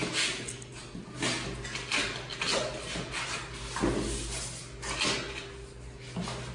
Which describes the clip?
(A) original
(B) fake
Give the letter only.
A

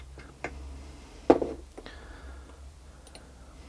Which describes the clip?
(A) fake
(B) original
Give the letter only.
B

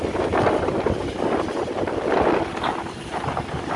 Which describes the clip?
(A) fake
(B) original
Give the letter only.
B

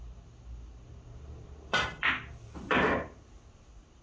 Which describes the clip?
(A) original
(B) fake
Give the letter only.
A